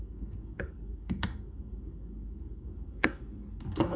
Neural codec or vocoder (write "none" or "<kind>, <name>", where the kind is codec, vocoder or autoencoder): codec, SNAC